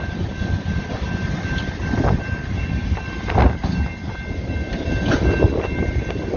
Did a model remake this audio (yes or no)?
no